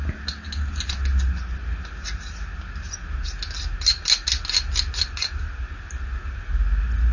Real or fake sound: real